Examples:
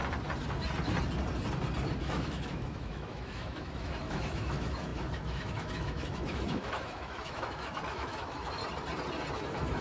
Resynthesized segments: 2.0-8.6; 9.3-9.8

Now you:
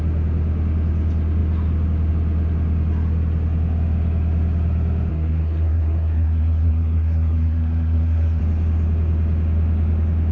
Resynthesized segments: 5.1-8.4

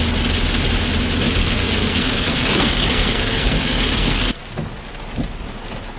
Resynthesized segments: 1.4-4.4

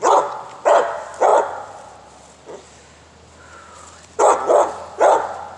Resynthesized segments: none

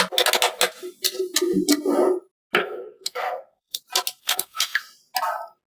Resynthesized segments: 2.6-3.8; 4.2-4.8

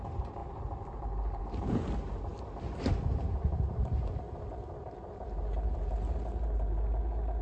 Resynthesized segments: 0.4-1.4; 2.3-2.9; 3.5-4.2

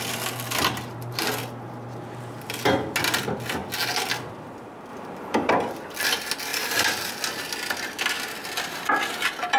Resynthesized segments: 4.9-5.5; 6.5-7.1